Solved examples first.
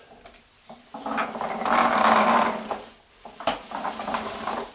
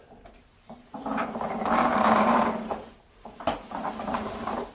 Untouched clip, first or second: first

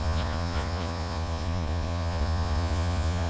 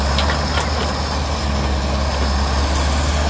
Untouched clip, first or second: second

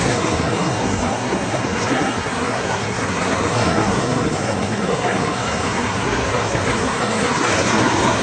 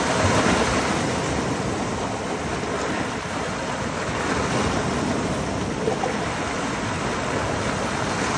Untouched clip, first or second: second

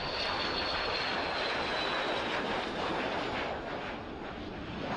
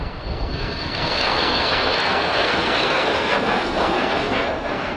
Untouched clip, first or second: first